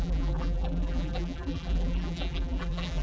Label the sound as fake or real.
fake